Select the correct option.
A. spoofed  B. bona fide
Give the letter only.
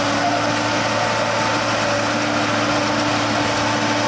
B